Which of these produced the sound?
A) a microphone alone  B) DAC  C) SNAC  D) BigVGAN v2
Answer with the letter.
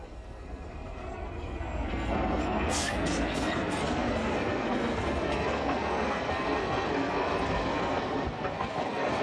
C